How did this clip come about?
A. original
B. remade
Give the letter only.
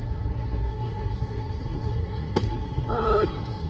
B